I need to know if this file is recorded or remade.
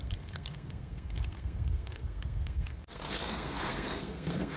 remade